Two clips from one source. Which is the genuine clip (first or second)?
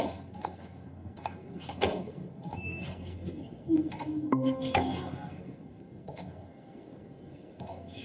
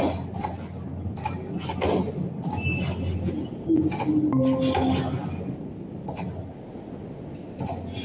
second